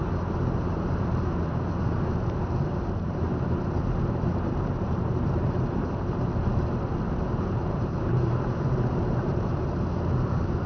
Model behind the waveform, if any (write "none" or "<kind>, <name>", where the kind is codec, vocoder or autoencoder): vocoder, BigVGAN v2